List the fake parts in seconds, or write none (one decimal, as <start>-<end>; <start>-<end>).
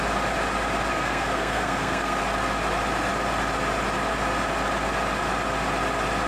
0.9-2.2